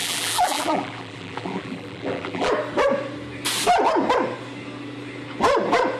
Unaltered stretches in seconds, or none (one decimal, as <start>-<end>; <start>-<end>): 2.5-6.0